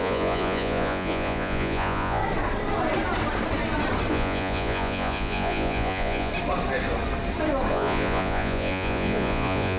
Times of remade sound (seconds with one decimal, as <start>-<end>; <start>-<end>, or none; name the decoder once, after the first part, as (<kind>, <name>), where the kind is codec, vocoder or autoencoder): 0.0-2.2 (vocoder, Vocos); 4.1-6.3; 7.7-9.8